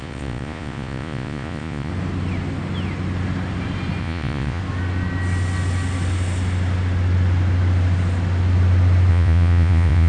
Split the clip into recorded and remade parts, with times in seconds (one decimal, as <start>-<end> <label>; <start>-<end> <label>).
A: 0.0-1.9 remade; 1.9-4.0 recorded; 4.0-4.6 remade; 4.6-9.1 recorded; 9.1-10.1 remade